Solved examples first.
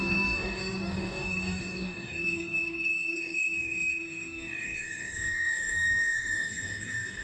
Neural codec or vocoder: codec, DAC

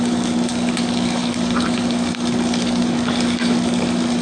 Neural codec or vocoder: codec, DAC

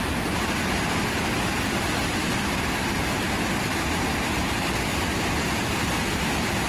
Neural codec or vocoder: none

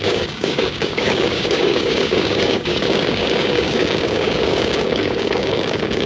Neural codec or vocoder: codec, DAC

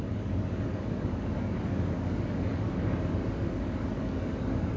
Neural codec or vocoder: codec, DAC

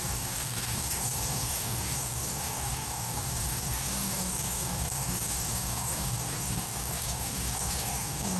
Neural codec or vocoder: codec, DAC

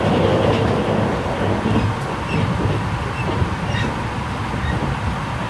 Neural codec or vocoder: none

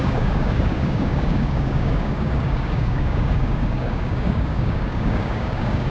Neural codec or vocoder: codec, DAC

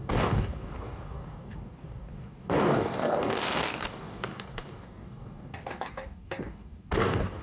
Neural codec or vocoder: codec, DAC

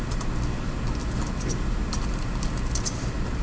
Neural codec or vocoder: none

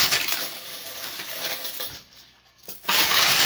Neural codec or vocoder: codec, DAC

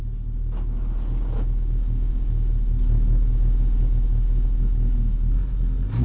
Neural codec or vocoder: none